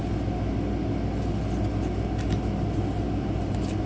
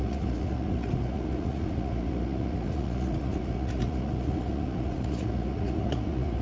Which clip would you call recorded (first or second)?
first